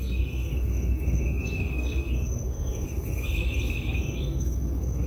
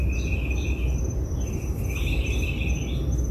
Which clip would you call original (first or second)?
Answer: second